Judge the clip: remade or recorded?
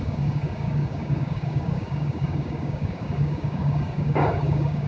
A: remade